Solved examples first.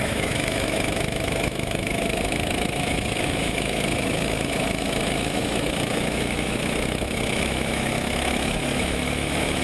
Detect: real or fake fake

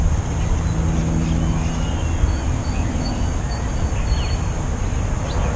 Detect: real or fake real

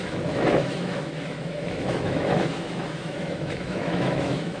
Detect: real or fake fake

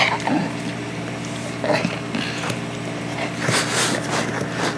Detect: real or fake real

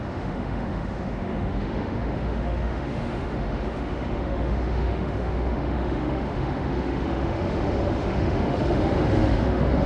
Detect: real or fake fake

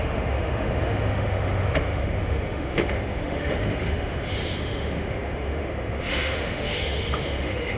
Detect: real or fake fake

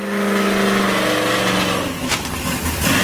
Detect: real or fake real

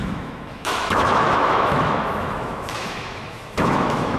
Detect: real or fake fake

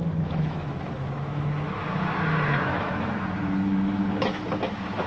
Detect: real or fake fake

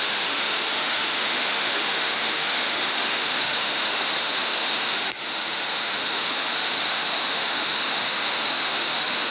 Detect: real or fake fake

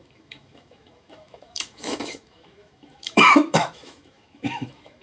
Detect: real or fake fake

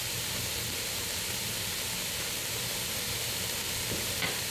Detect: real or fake real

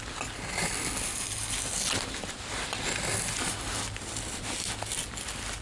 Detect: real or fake real